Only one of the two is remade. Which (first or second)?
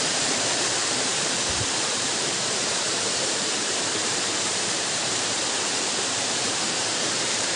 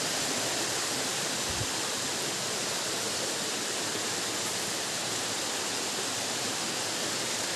first